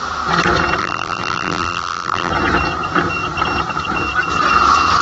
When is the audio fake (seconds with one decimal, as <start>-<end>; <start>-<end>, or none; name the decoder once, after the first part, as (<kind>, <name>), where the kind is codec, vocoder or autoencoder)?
0.8-2.3 (vocoder, BigVGAN v2)